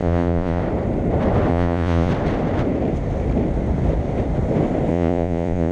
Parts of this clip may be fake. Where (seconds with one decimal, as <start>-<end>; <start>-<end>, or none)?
0.0-0.6; 1.5-2.1; 4.9-5.7